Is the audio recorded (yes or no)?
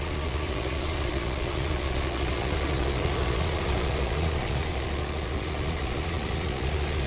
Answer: no